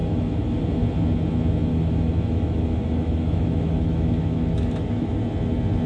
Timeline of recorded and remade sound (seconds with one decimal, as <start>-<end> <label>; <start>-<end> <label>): 0.0-0.6 remade; 0.6-1.7 recorded; 1.7-5.2 remade; 5.2-5.9 recorded